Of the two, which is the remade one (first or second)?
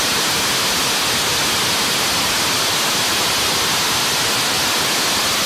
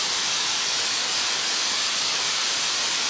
second